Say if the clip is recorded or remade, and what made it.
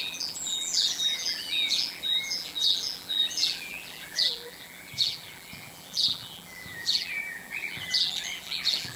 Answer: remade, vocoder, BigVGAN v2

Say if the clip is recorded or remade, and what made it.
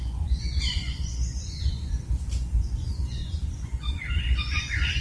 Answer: remade, vocoder, Vocos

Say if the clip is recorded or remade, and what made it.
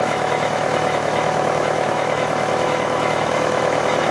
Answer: remade, autoencoder, DAC-VAE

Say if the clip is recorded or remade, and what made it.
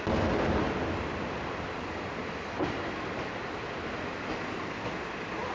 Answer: recorded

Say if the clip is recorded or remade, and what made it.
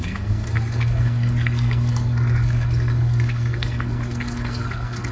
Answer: remade, codec, SNAC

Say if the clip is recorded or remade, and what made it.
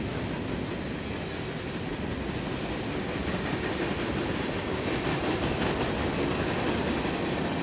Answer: recorded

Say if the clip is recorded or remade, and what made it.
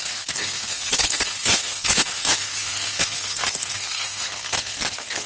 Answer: remade, codec, SNAC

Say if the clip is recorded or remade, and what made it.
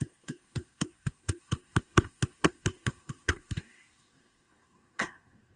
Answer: remade, codec, SNAC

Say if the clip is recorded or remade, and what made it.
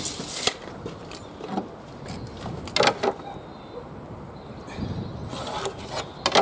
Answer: recorded